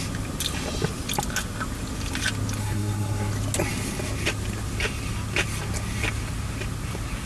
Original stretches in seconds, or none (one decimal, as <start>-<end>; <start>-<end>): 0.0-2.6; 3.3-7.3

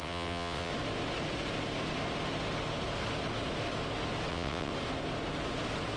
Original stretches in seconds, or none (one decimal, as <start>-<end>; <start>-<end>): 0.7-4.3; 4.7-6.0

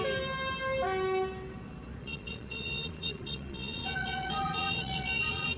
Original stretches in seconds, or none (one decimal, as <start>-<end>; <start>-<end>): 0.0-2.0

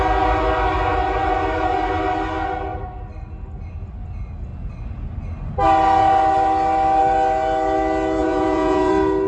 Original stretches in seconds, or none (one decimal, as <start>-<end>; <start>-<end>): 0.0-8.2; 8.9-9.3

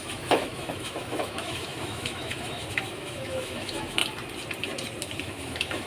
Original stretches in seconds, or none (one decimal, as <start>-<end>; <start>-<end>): 4.0-5.2

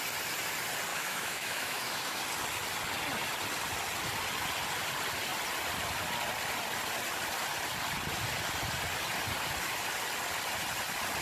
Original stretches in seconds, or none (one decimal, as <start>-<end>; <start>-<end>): 0.0-0.9; 2.2-11.2

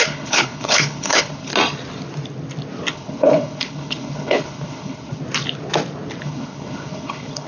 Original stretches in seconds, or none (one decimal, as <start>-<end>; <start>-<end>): 1.5-2.9; 5.2-6.2

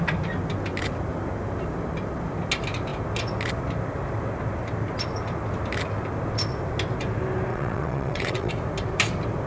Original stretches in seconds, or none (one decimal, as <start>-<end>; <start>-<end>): 0.0-7.5; 8.5-9.5